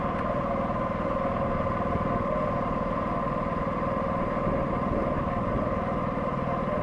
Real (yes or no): yes